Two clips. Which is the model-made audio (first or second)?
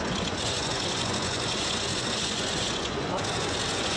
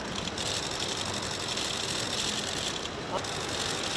first